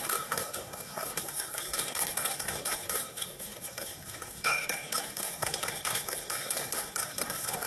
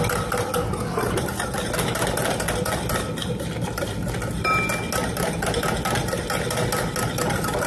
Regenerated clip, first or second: first